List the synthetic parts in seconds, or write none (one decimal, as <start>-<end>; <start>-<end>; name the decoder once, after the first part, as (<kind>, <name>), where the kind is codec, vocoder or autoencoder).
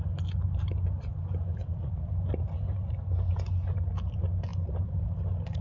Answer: 1.1-3.3 (vocoder, BigVGAN v2); 4.5-5.0